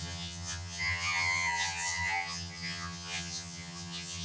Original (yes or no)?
no